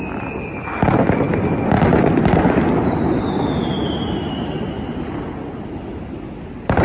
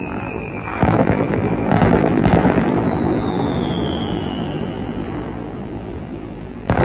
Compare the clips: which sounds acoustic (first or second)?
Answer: first